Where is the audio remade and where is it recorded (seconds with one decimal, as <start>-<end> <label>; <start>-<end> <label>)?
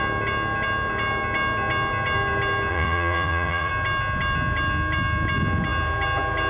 0.0-2.7 recorded; 2.7-3.7 remade; 3.7-6.5 recorded